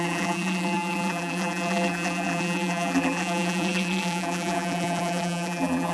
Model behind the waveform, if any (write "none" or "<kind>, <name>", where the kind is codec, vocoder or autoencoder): vocoder, BigVGAN v2